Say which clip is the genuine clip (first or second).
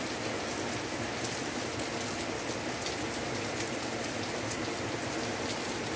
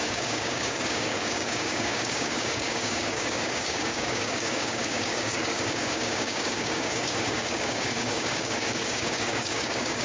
first